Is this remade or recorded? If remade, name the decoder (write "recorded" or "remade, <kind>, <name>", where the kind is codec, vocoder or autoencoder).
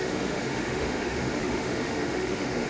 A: remade, autoencoder, DAC-VAE